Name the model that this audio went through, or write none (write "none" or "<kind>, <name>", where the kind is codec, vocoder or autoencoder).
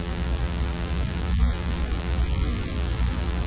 vocoder, BigVGAN v2